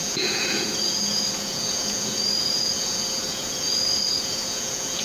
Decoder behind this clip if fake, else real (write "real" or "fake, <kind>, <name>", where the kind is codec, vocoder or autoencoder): fake, vocoder, Vocos